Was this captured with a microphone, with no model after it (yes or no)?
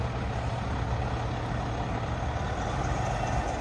yes